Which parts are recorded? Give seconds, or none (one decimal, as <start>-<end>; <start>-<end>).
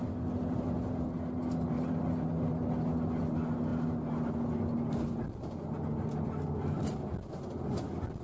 0.0-8.2